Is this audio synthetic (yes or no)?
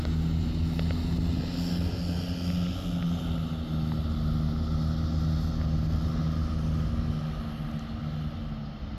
no